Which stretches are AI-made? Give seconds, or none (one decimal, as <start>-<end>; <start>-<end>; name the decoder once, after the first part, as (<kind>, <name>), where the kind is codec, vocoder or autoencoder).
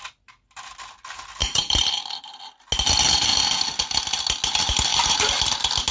1.4-2.4 (vocoder, BigVGAN v2); 4.9-5.4